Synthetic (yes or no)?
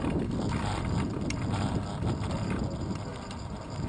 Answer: no